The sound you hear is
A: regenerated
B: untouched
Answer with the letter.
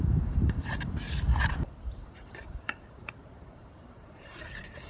A